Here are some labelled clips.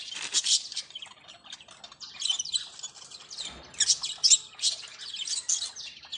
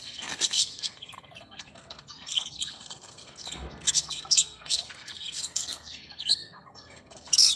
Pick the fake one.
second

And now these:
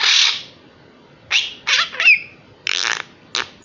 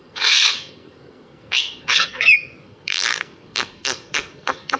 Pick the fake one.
second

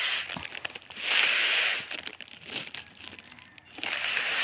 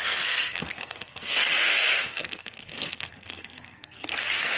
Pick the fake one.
second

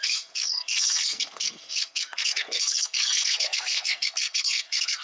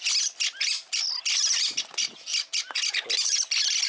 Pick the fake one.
first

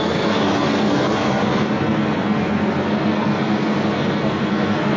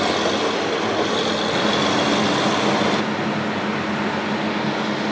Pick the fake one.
first